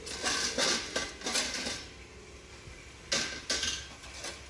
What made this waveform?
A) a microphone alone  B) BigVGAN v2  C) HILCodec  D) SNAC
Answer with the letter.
A